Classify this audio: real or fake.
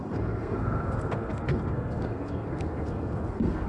fake